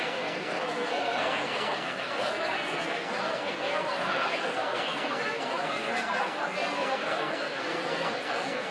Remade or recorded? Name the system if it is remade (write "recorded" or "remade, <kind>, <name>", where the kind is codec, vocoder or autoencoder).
remade, codec, SNAC